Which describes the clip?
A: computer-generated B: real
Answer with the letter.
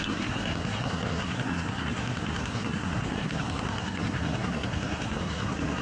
A